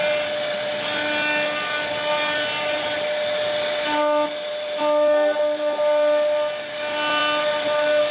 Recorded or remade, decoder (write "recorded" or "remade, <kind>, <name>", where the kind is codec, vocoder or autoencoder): recorded